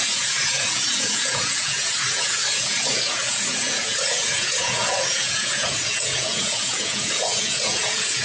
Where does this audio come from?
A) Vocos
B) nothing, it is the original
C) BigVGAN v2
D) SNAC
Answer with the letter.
A